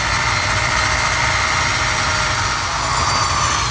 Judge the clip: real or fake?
real